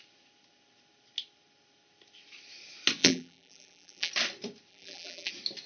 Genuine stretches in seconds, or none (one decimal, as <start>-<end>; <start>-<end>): 0.0-3.0; 4.1-4.7; 5.3-5.7